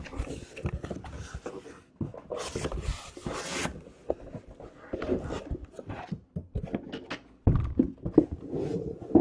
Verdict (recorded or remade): recorded